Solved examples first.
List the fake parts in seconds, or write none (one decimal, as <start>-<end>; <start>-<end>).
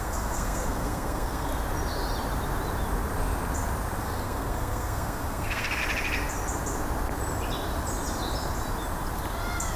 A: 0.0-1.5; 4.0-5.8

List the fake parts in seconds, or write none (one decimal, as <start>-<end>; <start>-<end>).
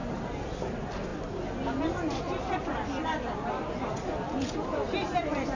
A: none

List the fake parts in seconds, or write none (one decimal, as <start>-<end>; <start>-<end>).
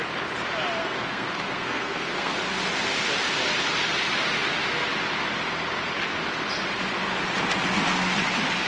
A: 0.8-2.4